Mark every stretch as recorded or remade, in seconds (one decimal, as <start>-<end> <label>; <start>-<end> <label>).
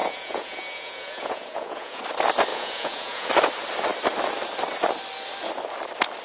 0.0-2.0 remade; 2.0-2.5 recorded; 2.5-3.3 remade; 3.3-6.2 recorded